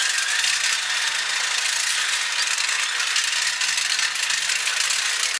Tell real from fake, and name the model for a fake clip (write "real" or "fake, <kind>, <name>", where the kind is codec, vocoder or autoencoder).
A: real